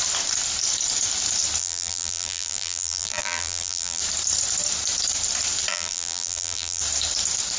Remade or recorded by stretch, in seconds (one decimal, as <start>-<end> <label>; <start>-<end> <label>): 0.0-1.6 recorded; 1.6-4.0 remade; 4.0-5.7 recorded; 5.7-6.8 remade; 6.8-7.6 recorded